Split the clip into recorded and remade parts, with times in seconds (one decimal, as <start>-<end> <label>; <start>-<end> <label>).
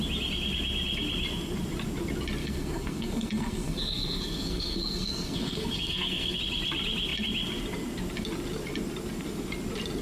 0.0-2.4 recorded; 2.4-6.4 remade; 6.4-10.0 recorded